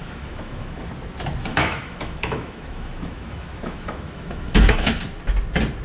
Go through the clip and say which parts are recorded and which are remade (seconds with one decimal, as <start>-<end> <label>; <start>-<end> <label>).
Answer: 0.0-0.9 remade; 0.9-1.5 recorded; 1.5-5.0 remade; 5.0-5.8 recorded